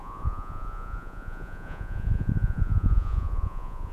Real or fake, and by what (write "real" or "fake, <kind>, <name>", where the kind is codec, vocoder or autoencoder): fake, vocoder, Vocos